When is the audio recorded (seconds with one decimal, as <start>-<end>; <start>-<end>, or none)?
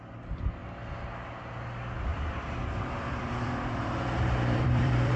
0.0-2.1